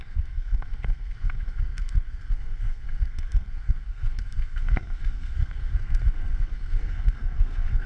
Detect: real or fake fake